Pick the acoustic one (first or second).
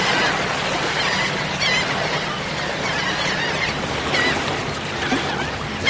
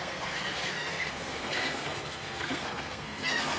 first